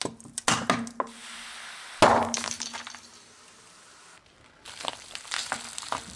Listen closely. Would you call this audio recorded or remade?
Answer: recorded